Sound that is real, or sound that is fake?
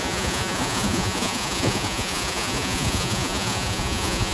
fake